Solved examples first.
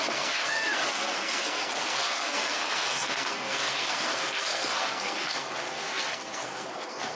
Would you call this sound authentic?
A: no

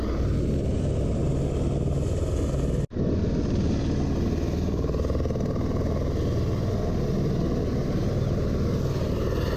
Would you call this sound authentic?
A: yes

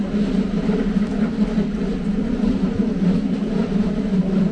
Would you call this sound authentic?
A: yes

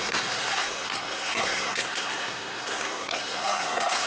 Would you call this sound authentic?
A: no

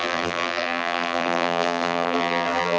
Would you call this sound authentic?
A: no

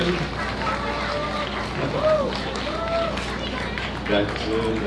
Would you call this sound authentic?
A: yes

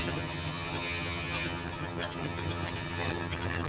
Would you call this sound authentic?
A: no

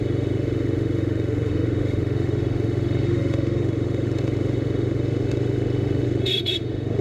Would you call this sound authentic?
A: no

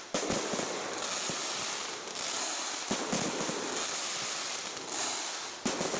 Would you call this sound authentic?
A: yes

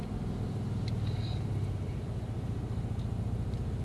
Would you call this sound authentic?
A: yes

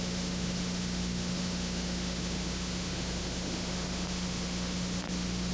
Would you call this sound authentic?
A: no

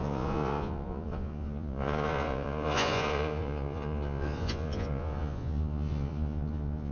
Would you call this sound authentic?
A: no